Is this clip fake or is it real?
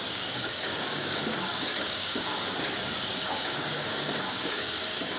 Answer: fake